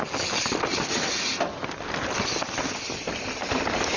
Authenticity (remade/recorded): recorded